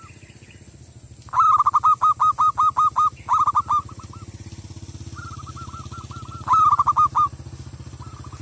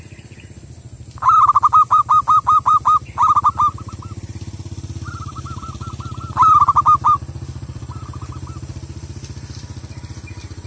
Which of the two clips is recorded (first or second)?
first